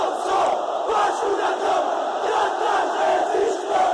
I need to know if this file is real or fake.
real